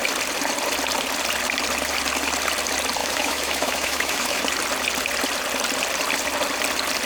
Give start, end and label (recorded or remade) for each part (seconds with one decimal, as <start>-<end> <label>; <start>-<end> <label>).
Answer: 0.0-3.0 recorded; 3.0-4.4 remade; 4.4-7.1 recorded